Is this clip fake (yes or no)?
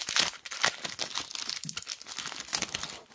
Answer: no